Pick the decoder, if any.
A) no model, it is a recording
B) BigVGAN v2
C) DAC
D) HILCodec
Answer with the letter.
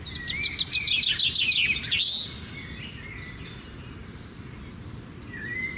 A